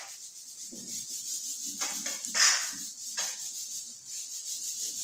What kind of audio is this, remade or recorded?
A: recorded